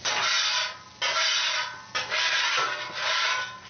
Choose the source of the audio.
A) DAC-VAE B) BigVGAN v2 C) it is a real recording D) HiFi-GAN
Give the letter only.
C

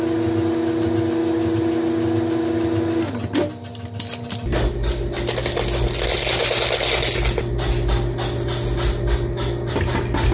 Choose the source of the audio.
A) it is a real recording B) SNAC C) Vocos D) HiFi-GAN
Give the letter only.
A